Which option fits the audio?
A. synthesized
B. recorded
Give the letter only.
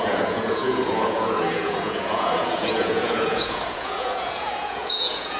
A